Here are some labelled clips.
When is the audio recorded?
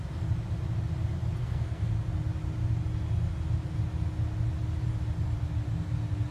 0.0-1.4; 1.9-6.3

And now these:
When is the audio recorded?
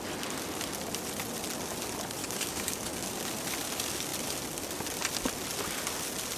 0.0-2.2; 3.1-6.4